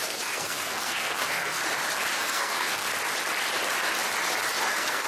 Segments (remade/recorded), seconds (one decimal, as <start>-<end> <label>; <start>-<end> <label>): 0.0-1.6 remade; 1.6-2.2 recorded; 2.2-2.8 remade; 2.8-4.6 recorded; 4.6-5.1 remade